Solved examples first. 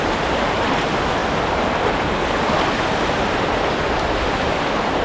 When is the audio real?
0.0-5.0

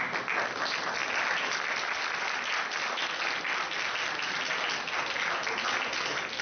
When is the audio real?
0.0-6.4